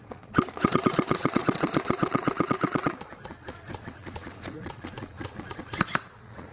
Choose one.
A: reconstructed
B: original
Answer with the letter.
A